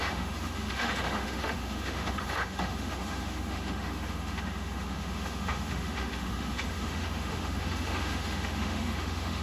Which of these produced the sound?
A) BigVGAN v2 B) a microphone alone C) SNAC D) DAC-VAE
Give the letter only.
D